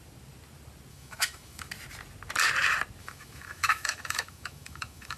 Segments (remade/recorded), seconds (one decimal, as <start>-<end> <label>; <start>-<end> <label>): 0.0-0.9 recorded; 0.9-1.7 remade; 1.7-3.0 recorded; 3.0-5.2 remade